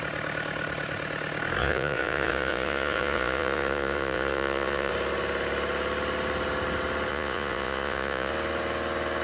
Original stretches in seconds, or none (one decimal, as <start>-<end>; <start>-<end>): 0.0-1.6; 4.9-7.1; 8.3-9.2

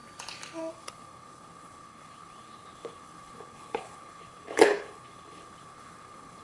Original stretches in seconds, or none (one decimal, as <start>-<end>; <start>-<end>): 0.0-0.7

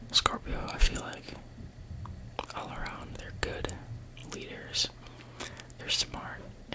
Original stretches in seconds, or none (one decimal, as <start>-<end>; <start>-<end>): 0.0-0.6; 1.4-6.7